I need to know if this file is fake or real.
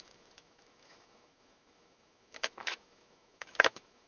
fake